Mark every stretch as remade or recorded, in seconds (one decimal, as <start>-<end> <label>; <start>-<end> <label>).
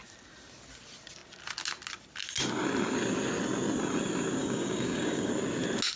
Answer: 0.0-4.4 recorded; 4.4-5.3 remade; 5.3-6.0 recorded